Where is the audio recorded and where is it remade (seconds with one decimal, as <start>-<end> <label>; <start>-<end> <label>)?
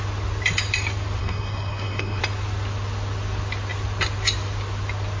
0.0-1.2 recorded; 1.2-2.2 remade; 2.2-5.2 recorded